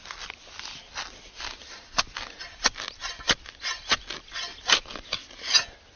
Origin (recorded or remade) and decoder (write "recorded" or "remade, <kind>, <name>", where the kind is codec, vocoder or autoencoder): recorded